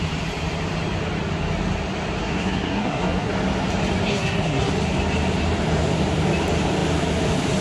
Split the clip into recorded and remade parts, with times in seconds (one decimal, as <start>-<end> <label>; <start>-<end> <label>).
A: 0.0-2.2 recorded; 2.2-3.3 remade; 3.3-4.1 recorded; 4.1-4.7 remade; 4.7-7.6 recorded